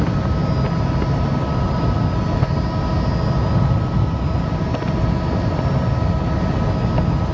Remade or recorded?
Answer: recorded